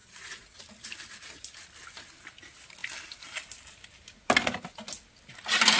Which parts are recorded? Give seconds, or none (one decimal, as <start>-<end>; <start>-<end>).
0.6-5.8